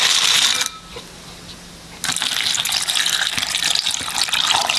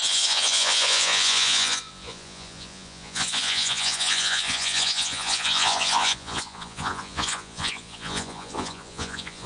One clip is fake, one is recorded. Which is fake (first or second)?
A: second